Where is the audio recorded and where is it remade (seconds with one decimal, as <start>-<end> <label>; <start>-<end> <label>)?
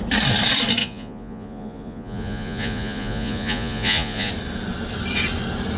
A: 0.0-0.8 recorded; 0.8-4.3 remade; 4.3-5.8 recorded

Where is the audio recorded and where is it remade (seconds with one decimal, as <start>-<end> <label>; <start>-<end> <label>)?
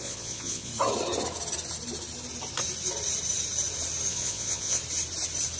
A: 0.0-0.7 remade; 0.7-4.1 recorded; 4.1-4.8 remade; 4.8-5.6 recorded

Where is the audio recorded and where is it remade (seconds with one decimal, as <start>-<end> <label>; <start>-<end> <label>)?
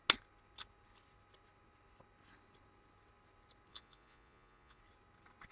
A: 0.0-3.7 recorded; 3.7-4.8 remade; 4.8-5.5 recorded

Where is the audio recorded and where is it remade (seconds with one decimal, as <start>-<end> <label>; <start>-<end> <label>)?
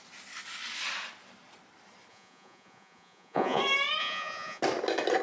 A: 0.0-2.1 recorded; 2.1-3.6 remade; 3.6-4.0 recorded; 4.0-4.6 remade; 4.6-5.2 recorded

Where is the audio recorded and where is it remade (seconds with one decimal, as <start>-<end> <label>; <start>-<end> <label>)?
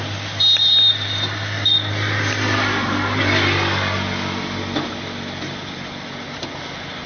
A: 0.0-7.1 recorded